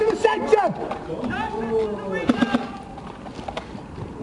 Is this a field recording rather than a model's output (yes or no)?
yes